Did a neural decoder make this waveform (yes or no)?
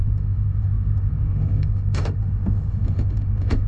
yes